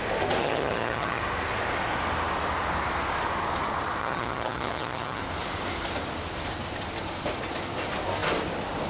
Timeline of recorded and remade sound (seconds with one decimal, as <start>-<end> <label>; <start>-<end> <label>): 0.0-0.4 recorded; 0.4-1.2 remade; 1.2-4.0 recorded; 4.0-5.2 remade; 5.2-8.9 recorded

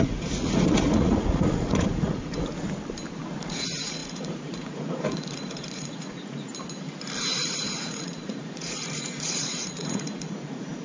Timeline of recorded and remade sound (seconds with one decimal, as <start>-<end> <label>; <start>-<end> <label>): 0.0-2.5 remade; 2.5-3.4 recorded; 3.4-6.5 remade; 6.5-7.2 recorded; 7.2-10.8 remade

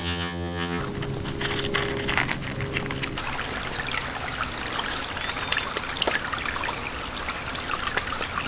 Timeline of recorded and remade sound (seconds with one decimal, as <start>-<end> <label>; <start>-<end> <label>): 0.0-0.8 remade; 0.8-8.5 recorded

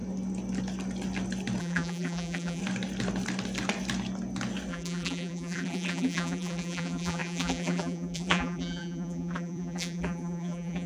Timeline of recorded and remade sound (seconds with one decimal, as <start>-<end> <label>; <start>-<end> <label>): 0.0-1.6 recorded; 1.6-2.6 remade; 2.6-4.7 recorded; 4.7-10.9 remade

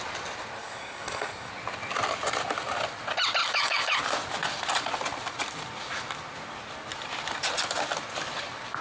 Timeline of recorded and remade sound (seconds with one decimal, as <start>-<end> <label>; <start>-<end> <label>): 0.0-0.6 recorded; 0.6-1.5 remade; 1.5-3.4 recorded; 3.4-4.0 remade; 4.0-8.8 recorded

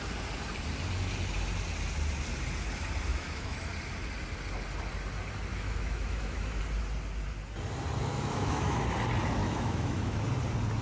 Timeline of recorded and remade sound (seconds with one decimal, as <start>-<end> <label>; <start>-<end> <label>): 0.0-3.1 recorded; 3.1-3.7 remade; 3.7-5.5 recorded; 5.5-6.6 remade; 6.6-8.1 recorded; 8.1-8.8 remade; 8.8-9.4 recorded; 9.4-10.2 remade; 10.2-10.8 recorded